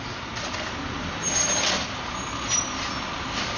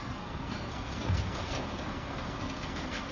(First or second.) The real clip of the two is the first